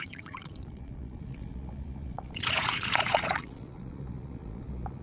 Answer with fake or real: fake